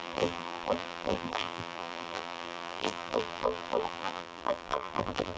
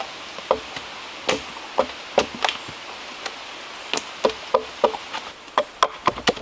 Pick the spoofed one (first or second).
first